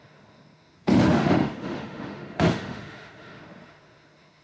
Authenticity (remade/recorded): remade